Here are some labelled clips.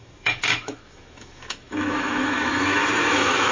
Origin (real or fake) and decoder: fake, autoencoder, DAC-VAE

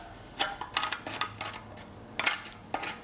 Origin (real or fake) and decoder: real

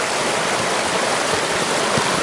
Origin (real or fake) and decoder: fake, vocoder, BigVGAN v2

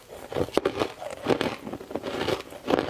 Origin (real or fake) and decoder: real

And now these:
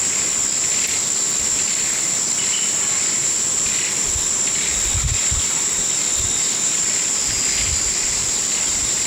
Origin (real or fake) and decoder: real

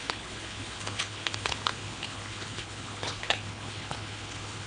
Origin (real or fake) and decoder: fake, codec, HILCodec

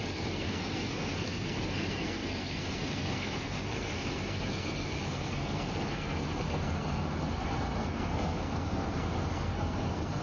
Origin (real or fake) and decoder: fake, codec, SNAC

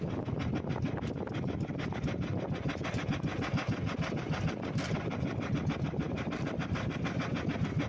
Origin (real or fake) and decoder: real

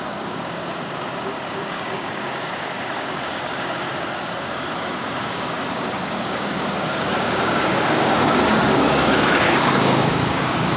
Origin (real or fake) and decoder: fake, codec, DAC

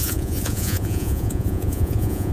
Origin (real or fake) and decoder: fake, vocoder, Vocos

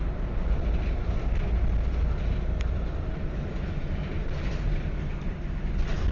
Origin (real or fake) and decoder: real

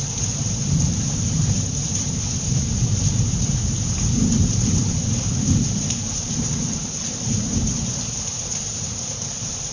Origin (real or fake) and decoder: fake, vocoder, BigVGAN v2